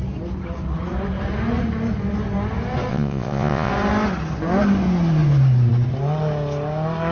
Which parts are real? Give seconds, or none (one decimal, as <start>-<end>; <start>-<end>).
0.0-2.9; 3.7-7.1